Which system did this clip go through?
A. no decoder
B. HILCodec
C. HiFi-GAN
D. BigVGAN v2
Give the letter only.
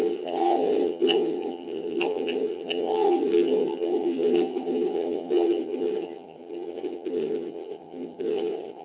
C